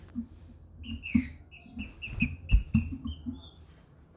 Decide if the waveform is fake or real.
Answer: real